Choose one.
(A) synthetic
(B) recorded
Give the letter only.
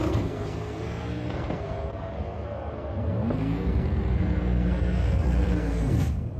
A